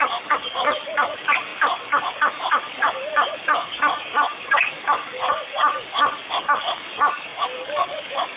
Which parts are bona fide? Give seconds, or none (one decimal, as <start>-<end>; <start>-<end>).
none